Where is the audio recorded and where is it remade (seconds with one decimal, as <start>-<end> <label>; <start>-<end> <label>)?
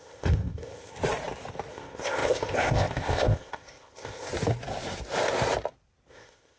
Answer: 0.0-1.0 remade; 1.0-1.7 recorded; 1.7-4.3 remade; 4.3-6.1 recorded; 6.1-6.6 remade